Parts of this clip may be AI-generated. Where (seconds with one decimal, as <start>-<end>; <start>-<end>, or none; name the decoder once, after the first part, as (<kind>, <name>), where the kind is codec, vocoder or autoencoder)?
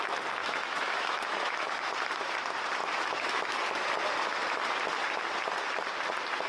0.4-1.9 (autoencoder, DAC-VAE); 2.8-3.9